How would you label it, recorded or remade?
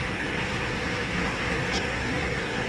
remade